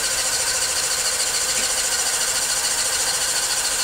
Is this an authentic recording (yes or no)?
yes